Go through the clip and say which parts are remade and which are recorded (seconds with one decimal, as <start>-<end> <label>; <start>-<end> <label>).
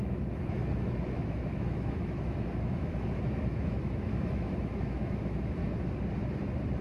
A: 0.0-5.6 remade; 5.6-6.8 recorded